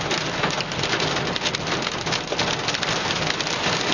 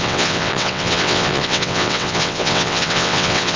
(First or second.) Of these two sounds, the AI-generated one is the second